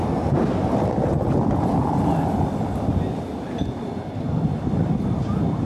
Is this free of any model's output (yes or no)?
yes